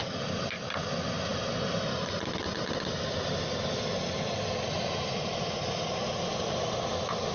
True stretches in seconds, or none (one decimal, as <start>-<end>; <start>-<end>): 0.0-7.3